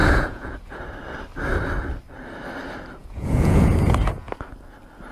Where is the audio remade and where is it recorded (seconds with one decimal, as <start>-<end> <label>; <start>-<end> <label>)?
0.0-0.8 remade; 0.8-3.0 recorded; 3.0-3.7 remade; 3.7-5.1 recorded